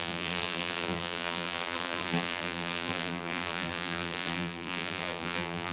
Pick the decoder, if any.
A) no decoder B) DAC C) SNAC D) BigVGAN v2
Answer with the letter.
D